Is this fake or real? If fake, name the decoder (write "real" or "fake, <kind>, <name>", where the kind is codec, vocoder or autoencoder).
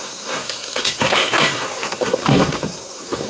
fake, codec, SNAC